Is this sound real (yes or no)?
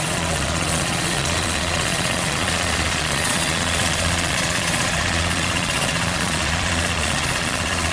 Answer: no